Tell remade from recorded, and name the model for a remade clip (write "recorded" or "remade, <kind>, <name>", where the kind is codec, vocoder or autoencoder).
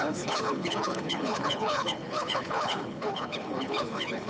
remade, codec, HILCodec